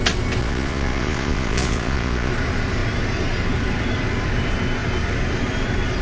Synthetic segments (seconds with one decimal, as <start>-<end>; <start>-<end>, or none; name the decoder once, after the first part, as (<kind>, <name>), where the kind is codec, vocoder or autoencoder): 0.4-2.3 (vocoder, Vocos)

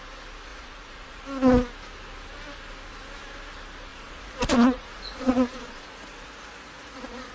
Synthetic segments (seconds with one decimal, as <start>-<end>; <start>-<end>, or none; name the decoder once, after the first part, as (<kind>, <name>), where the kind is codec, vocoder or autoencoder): 0.5-1.2 (vocoder, Vocos); 3.9-7.3

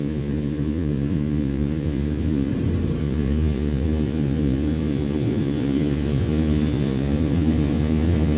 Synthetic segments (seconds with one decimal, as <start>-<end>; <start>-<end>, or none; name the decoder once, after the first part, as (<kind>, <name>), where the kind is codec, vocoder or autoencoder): 0.0-2.5 (vocoder, Vocos); 3.0-8.4

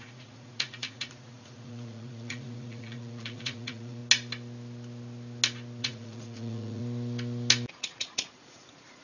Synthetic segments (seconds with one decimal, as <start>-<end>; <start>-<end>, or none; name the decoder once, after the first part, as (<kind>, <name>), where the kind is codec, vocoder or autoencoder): 0.0-4.0 (vocoder, Vocos); 5.8-6.8; 7.7-9.0

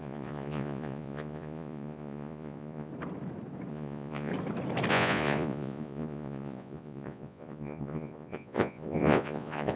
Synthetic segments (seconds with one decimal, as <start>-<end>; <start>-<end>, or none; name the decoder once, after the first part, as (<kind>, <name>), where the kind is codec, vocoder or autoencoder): 0.0-2.9 (vocoder, Vocos); 3.7-4.3; 4.9-9.8